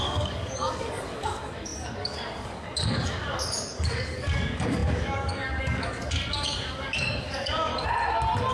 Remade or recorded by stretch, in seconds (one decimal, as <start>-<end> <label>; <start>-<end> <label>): 0.0-7.7 remade; 7.7-8.5 recorded